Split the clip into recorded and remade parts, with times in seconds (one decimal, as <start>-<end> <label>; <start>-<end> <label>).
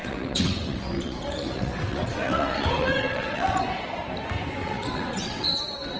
0.0-3.6 remade; 3.6-4.6 recorded; 4.6-6.0 remade